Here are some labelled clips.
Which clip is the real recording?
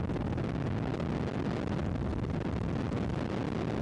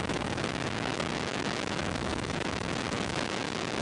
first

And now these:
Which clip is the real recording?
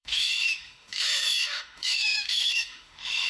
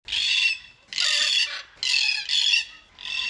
second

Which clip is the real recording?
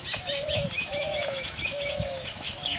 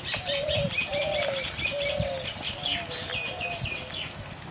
second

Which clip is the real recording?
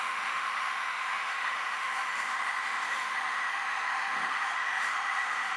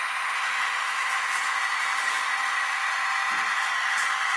second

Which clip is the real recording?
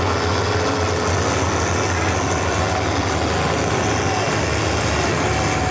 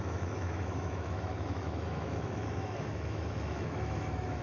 first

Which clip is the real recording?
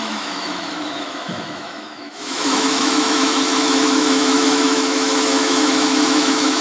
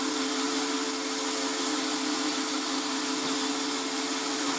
second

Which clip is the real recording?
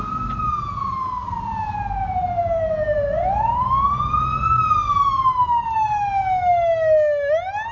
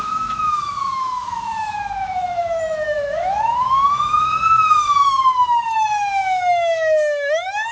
first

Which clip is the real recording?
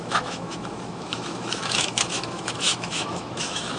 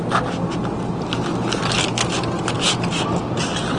second